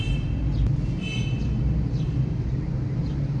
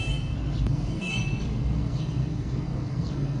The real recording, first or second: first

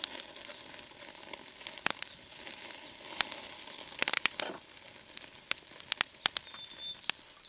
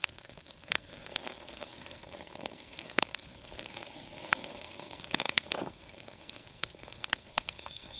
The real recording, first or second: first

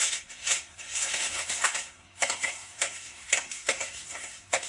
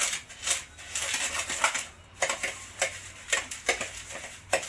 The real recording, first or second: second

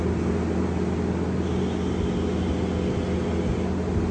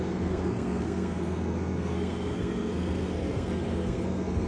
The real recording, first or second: first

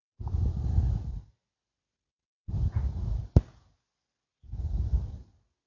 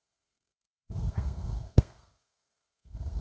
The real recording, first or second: first